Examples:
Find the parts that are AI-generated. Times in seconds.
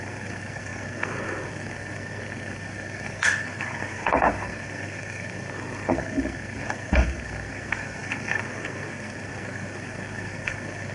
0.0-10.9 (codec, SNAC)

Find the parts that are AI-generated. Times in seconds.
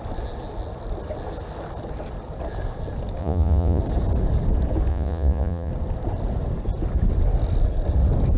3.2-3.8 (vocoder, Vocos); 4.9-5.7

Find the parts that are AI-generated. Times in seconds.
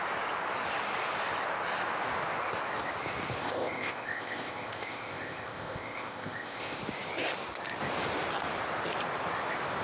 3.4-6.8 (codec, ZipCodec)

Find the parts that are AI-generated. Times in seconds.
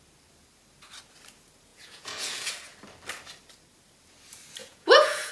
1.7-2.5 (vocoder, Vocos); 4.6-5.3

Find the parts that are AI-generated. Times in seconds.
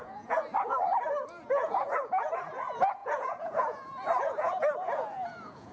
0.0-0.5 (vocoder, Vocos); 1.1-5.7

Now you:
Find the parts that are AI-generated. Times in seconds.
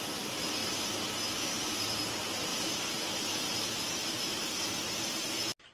2.5-3.6 (vocoder, BigVGAN v2); 4.0-4.6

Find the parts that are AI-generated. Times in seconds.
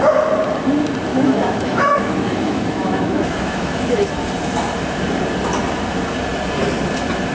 1.1-4.1 (autoencoder, DAC-VAE)